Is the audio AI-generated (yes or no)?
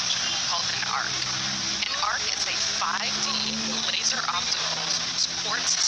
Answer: no